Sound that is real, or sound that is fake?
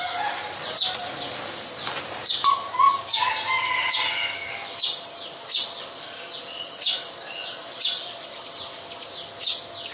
real